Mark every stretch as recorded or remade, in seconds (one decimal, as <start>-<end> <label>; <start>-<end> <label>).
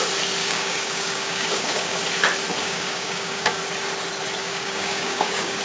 0.0-0.4 recorded; 0.4-2.0 remade; 2.0-2.6 recorded; 2.6-3.6 remade; 3.6-4.4 recorded; 4.4-5.6 remade